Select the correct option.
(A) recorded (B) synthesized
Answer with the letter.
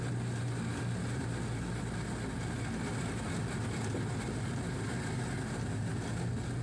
A